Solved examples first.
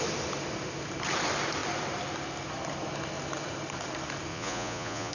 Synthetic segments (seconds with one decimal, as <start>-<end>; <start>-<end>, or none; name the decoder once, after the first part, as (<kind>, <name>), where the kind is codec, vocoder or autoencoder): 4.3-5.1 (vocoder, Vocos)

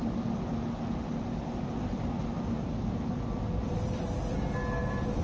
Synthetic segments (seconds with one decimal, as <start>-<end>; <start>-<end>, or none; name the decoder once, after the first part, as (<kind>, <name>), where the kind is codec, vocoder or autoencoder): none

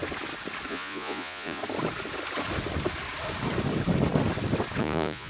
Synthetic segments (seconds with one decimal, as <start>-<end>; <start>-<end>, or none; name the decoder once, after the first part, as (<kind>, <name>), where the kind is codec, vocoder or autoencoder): 0.7-1.6 (vocoder, Vocos); 4.8-5.3